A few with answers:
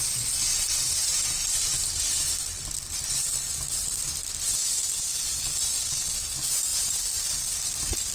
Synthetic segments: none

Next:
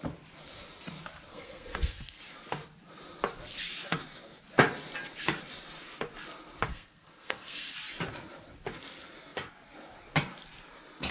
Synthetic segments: 1.3-2.2 (codec, SNAC); 6.7-7.7